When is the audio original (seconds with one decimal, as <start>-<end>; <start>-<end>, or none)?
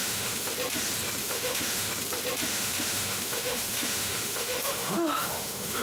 0.5-1.2; 1.9-2.5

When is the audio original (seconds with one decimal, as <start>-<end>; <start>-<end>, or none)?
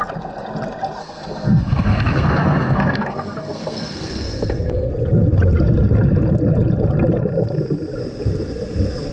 0.0-1.0; 4.9-9.1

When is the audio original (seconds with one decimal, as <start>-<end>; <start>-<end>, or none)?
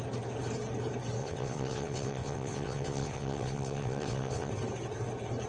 0.0-1.2; 4.5-5.5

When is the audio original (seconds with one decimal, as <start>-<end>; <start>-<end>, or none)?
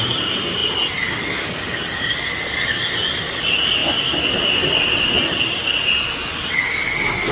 0.0-7.3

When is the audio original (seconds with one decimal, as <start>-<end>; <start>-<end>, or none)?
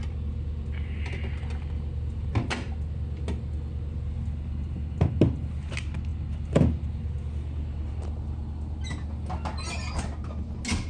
0.0-10.9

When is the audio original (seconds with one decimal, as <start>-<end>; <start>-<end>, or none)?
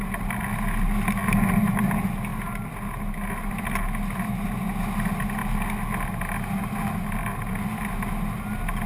0.0-8.9